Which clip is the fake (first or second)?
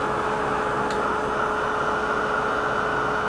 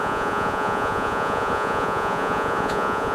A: second